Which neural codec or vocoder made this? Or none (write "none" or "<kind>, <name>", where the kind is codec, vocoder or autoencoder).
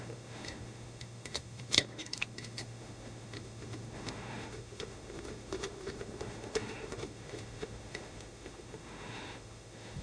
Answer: autoencoder, DAC-VAE